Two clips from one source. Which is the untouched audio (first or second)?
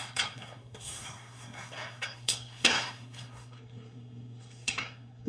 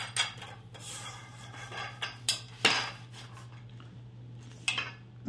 second